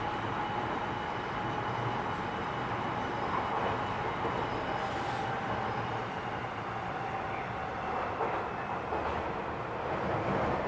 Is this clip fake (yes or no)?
no